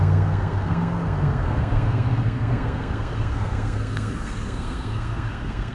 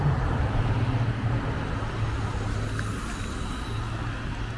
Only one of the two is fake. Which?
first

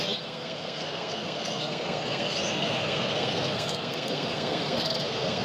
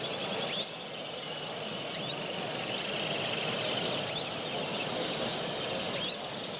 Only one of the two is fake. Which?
first